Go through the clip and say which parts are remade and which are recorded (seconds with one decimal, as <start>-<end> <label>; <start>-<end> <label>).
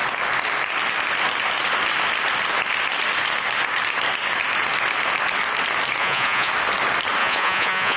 0.0-6.0 recorded; 6.0-6.5 remade; 6.5-7.2 recorded; 7.2-8.0 remade